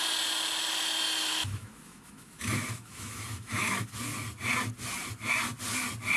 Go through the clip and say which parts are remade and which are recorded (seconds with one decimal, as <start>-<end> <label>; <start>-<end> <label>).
0.0-1.3 recorded; 1.3-3.9 remade; 3.9-6.2 recorded